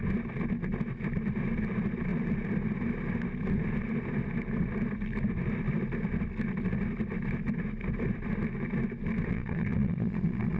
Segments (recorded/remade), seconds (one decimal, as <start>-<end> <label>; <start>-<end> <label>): 0.0-9.3 recorded; 9.3-10.6 remade